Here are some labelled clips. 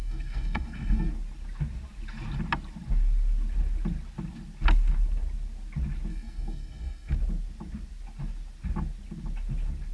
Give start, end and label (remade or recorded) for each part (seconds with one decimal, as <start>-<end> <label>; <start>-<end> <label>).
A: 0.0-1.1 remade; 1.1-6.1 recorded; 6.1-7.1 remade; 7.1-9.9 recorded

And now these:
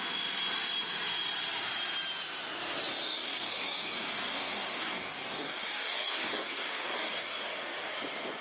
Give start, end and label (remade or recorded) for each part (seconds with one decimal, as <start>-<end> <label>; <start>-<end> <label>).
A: 0.0-2.9 recorded; 2.9-7.9 remade; 7.9-8.4 recorded

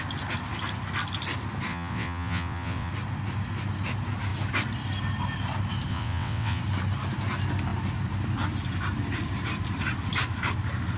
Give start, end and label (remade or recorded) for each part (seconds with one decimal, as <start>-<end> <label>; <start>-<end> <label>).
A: 0.0-1.7 recorded; 1.7-2.9 remade; 2.9-5.9 recorded; 5.9-6.6 remade; 6.6-11.0 recorded

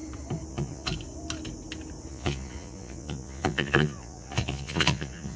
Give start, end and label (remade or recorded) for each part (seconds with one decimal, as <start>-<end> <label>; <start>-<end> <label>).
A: 0.0-0.5 recorded; 0.5-0.9 remade; 0.9-2.1 recorded; 2.1-5.4 remade

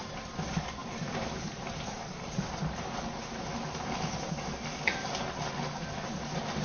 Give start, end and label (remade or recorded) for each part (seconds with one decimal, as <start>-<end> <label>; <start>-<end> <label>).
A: 0.0-6.6 recorded

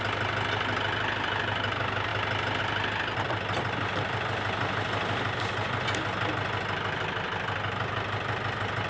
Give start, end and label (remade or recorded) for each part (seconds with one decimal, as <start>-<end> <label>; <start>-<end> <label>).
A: 0.0-8.9 recorded